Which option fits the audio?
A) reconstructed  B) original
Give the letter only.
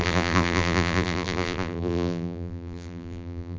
A